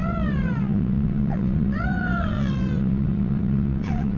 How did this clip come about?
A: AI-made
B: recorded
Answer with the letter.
A